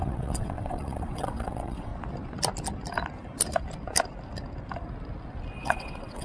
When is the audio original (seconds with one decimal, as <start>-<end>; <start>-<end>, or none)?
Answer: 1.9-5.6